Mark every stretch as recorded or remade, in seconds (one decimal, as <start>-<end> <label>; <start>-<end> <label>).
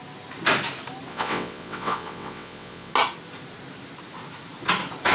0.0-1.1 recorded; 1.1-2.9 remade; 2.9-5.1 recorded